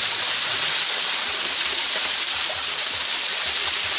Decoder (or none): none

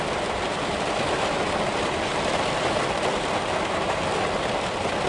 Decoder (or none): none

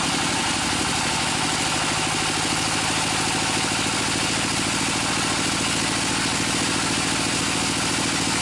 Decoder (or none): none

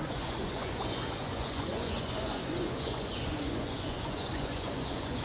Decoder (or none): vocoder, Vocos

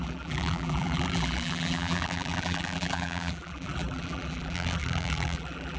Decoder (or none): vocoder, BigVGAN v2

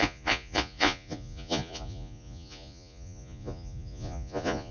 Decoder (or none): vocoder, Vocos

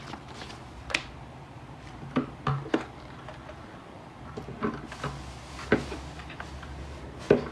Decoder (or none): none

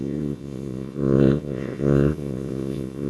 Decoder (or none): vocoder, Vocos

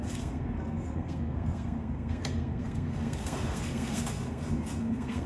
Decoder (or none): codec, SNAC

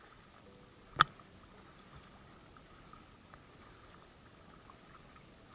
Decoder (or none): none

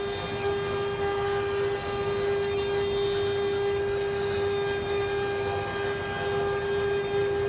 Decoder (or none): none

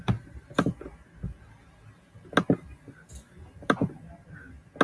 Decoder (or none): none